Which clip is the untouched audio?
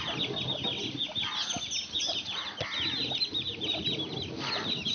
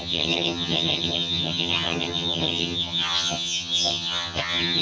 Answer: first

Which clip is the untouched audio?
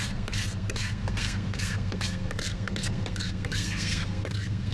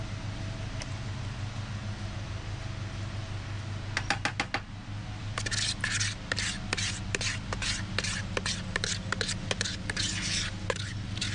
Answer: second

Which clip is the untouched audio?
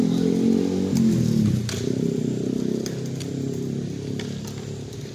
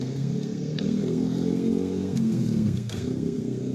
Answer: first